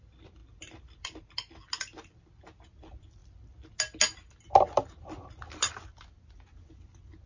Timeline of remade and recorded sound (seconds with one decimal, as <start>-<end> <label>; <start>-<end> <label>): 0.0-7.3 recorded